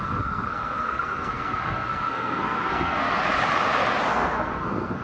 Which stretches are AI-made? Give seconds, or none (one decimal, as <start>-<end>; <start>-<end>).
0.0-3.2; 4.1-5.0